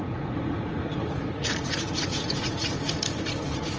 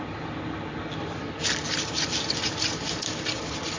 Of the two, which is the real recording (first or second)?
second